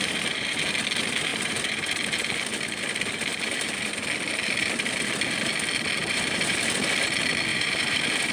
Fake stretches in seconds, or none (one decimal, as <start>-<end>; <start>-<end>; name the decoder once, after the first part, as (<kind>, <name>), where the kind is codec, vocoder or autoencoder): 1.3-2.0 (vocoder, BigVGAN v2); 6.0-6.8; 7.5-8.3